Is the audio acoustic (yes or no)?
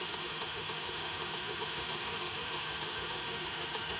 no